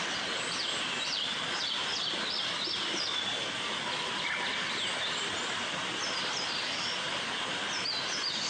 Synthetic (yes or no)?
yes